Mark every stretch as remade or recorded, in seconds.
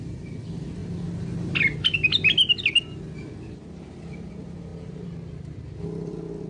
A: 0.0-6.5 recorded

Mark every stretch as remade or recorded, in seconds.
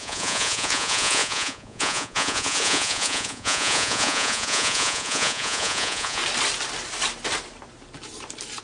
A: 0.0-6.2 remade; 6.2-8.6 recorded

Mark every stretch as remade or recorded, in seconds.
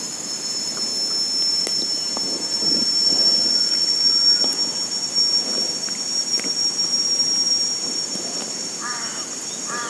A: 0.0-0.9 remade; 0.9-1.5 recorded; 1.5-9.9 remade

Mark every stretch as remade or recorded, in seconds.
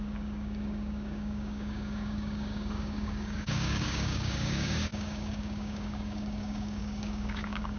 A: 0.0-7.8 remade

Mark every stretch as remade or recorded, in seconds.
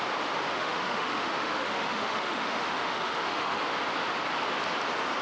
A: 0.0-0.5 recorded; 0.5-3.6 remade; 3.6-5.2 recorded